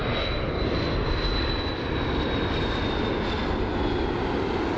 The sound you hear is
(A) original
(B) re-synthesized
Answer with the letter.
A